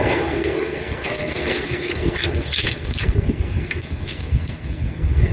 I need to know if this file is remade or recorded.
remade